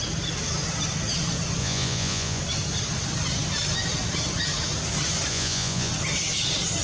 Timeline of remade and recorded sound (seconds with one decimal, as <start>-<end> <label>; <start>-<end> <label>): 0.0-1.6 recorded; 1.6-2.4 remade; 2.4-5.3 recorded; 5.3-5.9 remade; 5.9-6.8 recorded